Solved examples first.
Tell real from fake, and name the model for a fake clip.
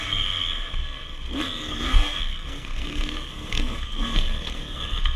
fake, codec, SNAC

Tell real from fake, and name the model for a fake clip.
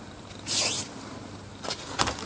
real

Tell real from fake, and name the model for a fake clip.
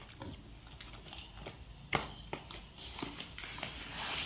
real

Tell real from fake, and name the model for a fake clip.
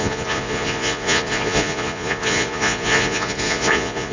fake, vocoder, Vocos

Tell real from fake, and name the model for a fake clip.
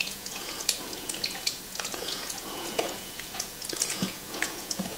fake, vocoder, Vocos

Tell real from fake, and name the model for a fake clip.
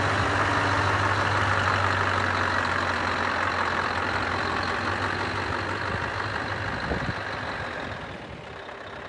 real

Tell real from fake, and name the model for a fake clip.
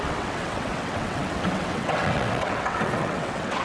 fake, vocoder, WaveNeXt